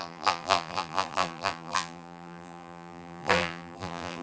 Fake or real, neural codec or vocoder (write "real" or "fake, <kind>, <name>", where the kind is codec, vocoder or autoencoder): fake, vocoder, BigVGAN v2